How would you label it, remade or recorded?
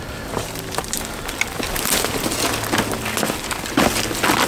recorded